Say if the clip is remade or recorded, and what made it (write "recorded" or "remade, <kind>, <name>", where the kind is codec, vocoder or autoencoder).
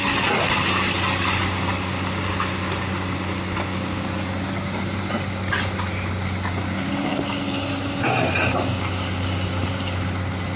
recorded